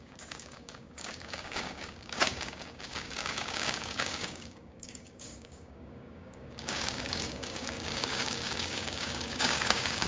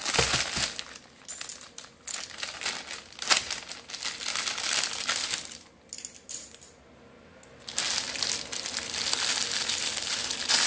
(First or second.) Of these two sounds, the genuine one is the second